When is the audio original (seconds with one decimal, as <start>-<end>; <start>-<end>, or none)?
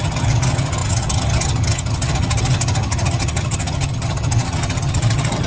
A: none